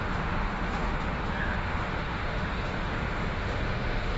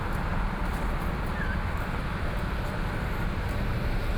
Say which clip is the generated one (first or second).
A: first